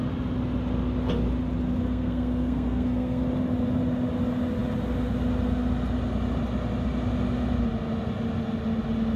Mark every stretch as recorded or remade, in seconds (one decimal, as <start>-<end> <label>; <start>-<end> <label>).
0.0-1.8 recorded; 1.8-3.2 remade; 3.2-9.2 recorded